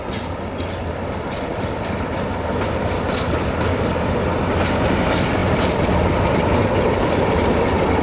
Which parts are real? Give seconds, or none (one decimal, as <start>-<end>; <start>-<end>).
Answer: 0.0-8.0